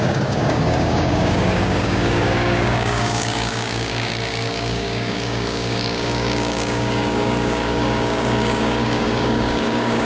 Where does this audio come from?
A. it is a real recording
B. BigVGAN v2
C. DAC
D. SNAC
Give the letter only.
C